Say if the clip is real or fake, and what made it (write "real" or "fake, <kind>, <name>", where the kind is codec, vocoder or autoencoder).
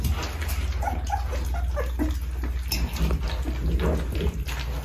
real